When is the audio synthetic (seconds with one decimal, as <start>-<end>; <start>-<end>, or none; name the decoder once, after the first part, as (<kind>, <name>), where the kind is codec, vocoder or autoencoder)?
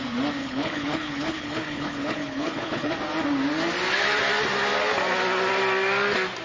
0.4-2.9 (codec, HILCodec)